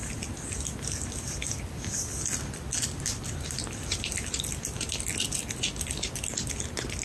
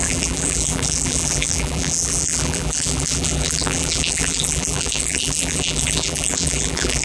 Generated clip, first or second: second